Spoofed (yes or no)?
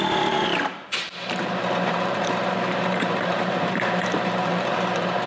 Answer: yes